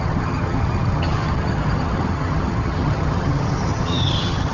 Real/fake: fake